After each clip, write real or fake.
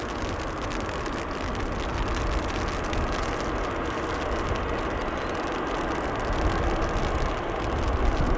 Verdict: real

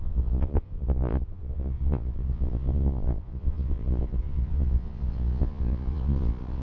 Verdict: fake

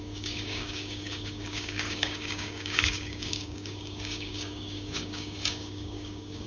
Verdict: fake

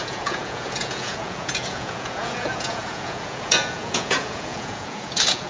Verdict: fake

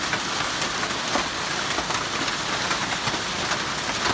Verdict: real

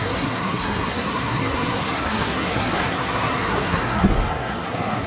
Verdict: fake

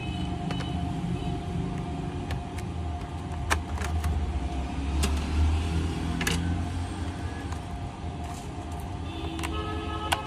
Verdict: real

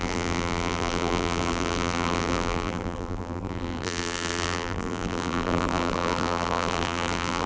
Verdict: fake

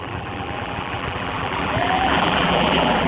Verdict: fake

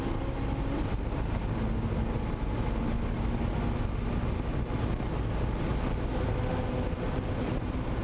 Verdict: real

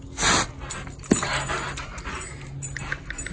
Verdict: real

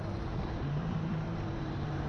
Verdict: fake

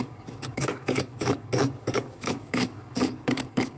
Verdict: fake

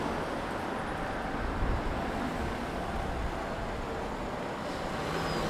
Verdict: real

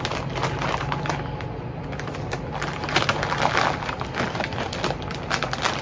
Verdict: real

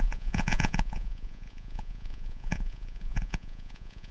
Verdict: fake